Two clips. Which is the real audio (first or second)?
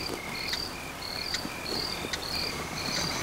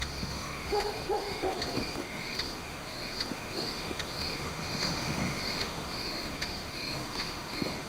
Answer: first